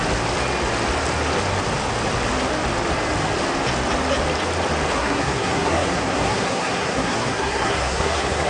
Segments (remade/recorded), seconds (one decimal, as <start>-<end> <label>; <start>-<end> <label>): 0.0-4.9 recorded; 4.9-8.5 remade